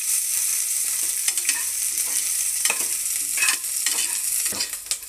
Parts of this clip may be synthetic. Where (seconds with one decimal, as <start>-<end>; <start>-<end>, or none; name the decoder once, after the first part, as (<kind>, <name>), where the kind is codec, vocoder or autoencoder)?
0.0-0.5 (vocoder, BigVGAN v2); 2.3-3.3